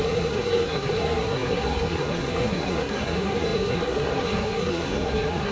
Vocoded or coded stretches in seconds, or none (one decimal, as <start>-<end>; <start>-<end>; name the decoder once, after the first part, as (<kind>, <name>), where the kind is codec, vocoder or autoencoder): 0.0-5.5 (codec, SNAC)